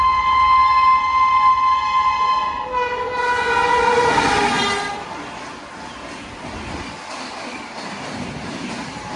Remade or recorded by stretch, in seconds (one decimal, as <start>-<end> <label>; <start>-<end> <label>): 0.0-9.2 recorded